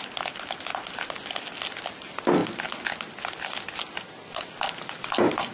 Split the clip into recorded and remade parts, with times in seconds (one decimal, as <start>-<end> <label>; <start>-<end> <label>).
0.0-5.5 recorded